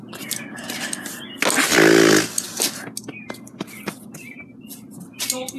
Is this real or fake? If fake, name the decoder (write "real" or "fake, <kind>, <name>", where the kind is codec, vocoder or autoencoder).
real